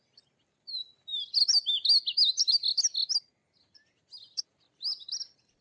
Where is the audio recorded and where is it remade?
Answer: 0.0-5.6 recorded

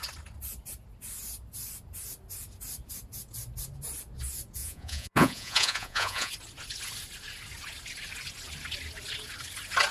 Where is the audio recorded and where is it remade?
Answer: 0.0-4.6 recorded; 4.6-6.3 remade; 6.3-9.9 recorded

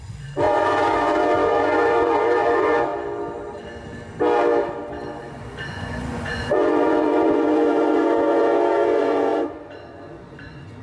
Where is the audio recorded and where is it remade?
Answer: 0.0-2.9 remade; 2.9-5.2 recorded; 5.2-10.8 remade

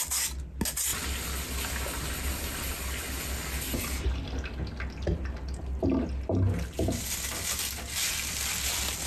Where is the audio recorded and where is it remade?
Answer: 0.0-9.1 recorded

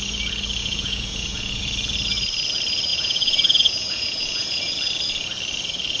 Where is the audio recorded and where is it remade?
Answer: 0.0-0.6 recorded; 0.6-1.6 remade; 1.6-2.9 recorded; 2.9-4.7 remade; 4.7-6.0 recorded

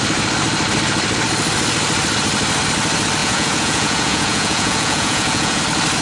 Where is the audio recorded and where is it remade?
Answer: 0.0-3.2 recorded; 3.2-5.6 remade; 5.6-6.0 recorded

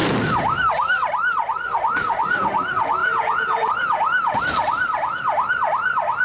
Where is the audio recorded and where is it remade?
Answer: 0.0-3.0 recorded; 3.0-4.4 remade; 4.4-6.2 recorded